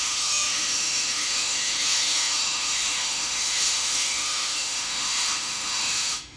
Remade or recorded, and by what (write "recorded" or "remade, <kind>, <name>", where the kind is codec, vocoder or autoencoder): remade, autoencoder, DAC-VAE